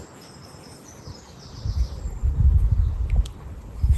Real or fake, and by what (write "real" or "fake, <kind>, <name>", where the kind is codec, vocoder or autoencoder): real